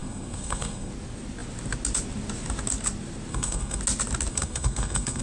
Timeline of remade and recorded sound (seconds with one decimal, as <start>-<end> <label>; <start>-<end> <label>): 0.0-0.9 remade; 0.9-3.3 recorded; 3.3-3.8 remade; 3.8-4.3 recorded; 4.3-5.2 remade